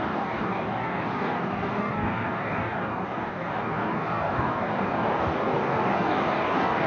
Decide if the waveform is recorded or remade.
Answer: remade